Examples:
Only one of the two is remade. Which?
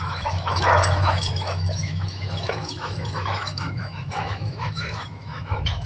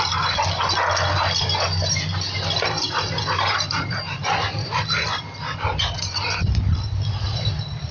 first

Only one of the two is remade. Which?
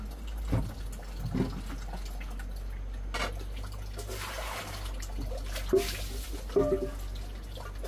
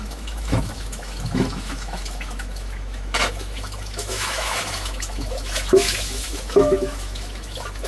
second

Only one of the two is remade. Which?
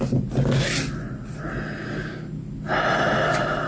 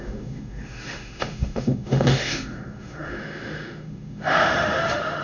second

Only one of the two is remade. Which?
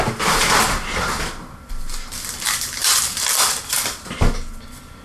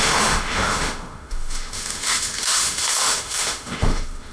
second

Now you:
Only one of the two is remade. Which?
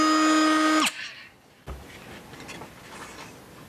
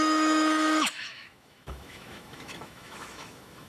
second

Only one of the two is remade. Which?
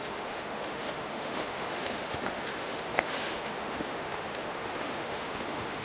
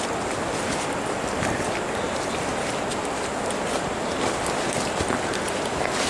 first